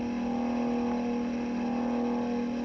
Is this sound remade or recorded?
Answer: recorded